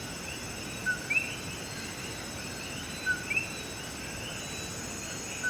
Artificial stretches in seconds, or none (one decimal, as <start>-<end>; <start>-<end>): none